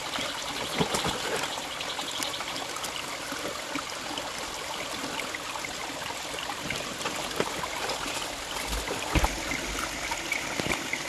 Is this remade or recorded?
recorded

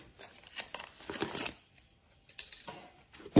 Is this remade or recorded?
recorded